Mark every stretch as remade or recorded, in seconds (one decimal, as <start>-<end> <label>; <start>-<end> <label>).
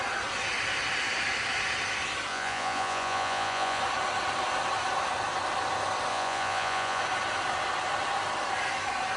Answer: 0.0-2.3 recorded; 2.3-3.8 remade; 3.8-6.1 recorded; 6.1-7.0 remade; 7.0-9.2 recorded